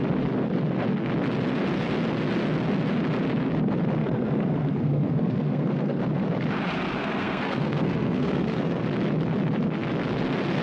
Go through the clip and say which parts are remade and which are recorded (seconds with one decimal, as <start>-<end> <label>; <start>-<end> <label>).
0.0-4.0 recorded; 4.0-6.0 remade; 6.0-7.0 recorded; 7.0-8.8 remade; 8.8-10.6 recorded